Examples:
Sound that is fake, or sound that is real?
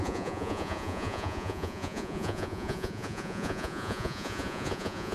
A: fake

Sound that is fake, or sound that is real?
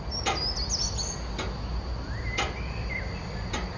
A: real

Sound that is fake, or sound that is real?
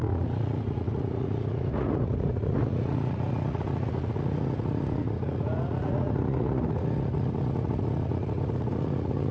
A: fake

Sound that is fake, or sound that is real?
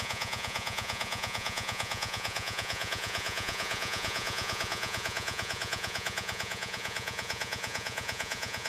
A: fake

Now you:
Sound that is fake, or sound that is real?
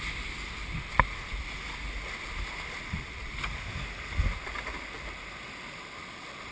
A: real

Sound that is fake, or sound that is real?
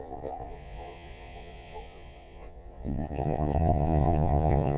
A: fake